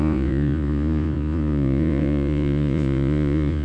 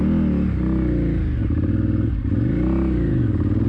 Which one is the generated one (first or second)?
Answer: first